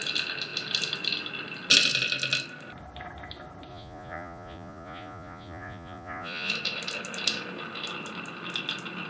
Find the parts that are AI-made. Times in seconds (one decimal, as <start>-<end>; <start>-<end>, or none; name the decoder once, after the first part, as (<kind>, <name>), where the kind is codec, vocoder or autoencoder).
3.7-6.5 (vocoder, Vocos)